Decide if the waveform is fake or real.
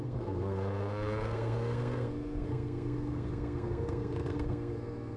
fake